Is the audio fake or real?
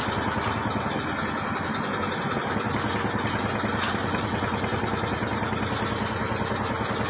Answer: real